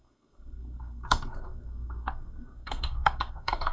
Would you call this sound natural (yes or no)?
no